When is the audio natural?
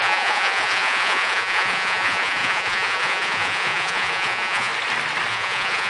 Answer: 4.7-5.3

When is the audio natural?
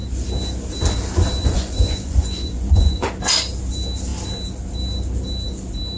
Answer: 0.0-1.4; 3.1-6.0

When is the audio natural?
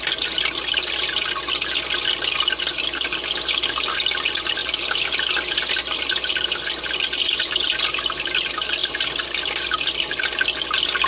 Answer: 0.0-11.1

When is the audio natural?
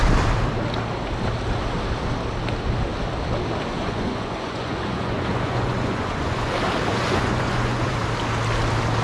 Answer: 0.0-3.7; 6.5-6.9; 8.0-9.0